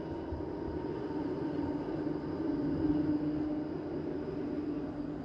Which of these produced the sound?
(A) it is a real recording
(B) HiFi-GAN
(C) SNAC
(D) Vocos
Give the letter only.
A